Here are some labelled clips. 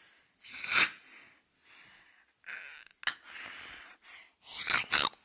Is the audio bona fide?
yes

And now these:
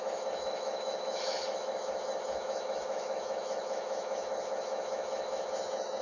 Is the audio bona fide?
no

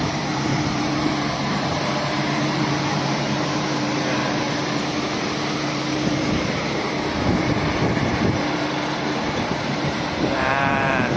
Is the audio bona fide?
no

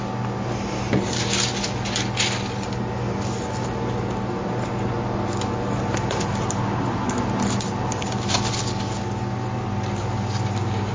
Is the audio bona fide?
yes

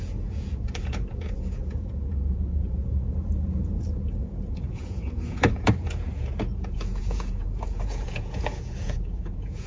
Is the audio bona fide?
no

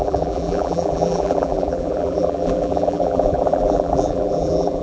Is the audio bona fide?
no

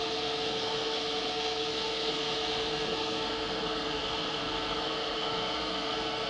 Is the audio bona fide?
no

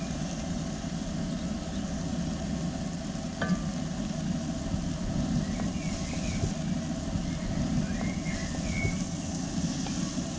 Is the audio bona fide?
yes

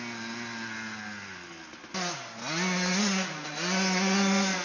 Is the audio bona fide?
yes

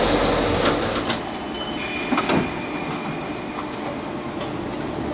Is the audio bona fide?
yes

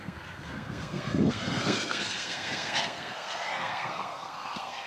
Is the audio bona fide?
no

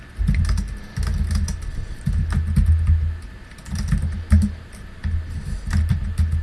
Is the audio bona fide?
yes